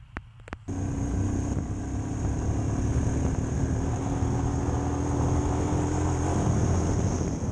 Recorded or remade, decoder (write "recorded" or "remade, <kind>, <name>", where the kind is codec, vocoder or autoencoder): recorded